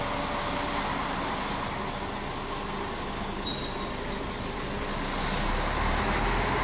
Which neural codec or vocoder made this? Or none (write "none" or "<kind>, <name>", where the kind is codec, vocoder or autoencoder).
none